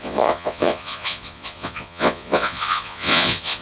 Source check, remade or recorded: remade